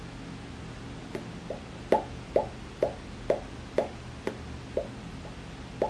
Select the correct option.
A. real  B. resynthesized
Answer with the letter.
A